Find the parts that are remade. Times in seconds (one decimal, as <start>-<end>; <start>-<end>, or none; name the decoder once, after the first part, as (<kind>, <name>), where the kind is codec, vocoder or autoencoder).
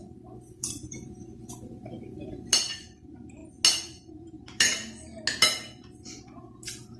0.0-3.4 (vocoder, BigVGAN v2); 4.1-4.8; 6.4-7.0